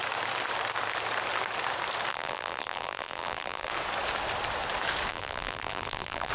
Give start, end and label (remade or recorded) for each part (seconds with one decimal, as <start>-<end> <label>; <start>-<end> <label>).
0.0-2.1 recorded; 2.1-3.7 remade; 3.7-5.1 recorded; 5.1-6.3 remade